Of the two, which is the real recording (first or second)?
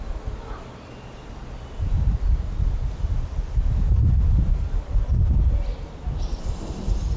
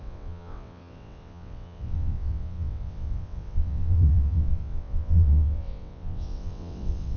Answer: first